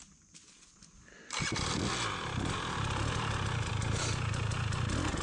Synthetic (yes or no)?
no